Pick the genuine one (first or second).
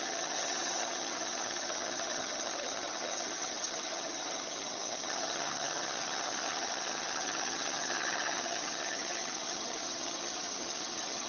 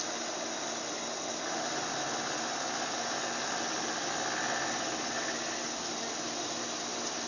second